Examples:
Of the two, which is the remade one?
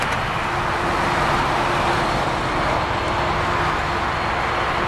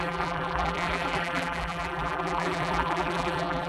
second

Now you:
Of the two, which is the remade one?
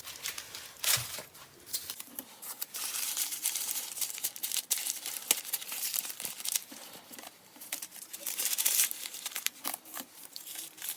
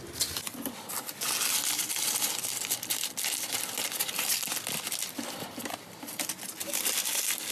first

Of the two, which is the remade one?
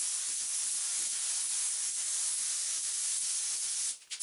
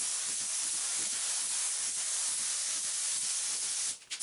second